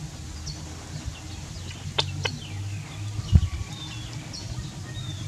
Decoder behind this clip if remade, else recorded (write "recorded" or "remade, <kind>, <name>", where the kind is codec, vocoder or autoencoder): recorded